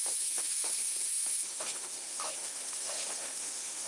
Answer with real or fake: fake